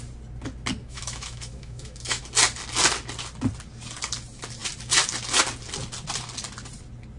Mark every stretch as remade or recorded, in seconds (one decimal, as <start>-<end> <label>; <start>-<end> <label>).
0.0-0.8 recorded; 0.8-2.2 remade; 2.2-7.2 recorded